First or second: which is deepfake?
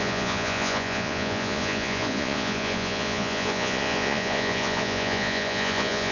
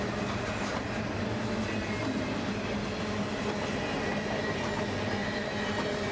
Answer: first